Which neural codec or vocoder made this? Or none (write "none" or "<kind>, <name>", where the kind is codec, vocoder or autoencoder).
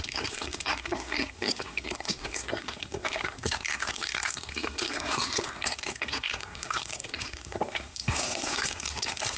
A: codec, SNAC